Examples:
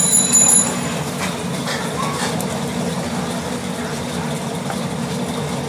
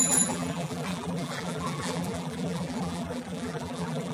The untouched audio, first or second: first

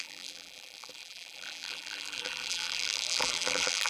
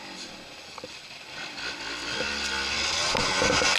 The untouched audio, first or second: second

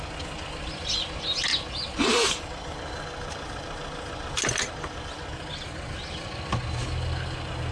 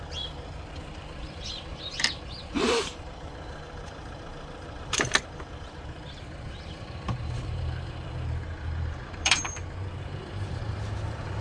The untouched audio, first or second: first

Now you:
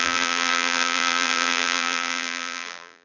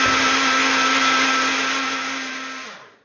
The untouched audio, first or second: second